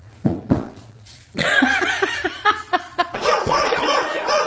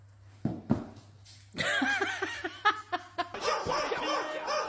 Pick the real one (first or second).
second